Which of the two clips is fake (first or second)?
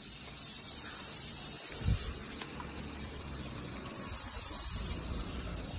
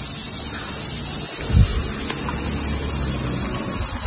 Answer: first